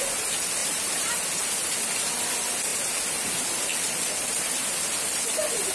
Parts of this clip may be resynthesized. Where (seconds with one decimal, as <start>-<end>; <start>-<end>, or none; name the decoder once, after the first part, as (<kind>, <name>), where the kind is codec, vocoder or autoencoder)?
0.6-1.1 (vocoder, BigVGAN v2)